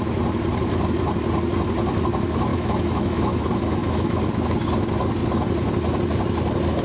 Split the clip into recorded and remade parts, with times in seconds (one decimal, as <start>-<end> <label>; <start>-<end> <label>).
0.0-2.5 recorded; 2.5-4.2 remade; 4.2-6.8 recorded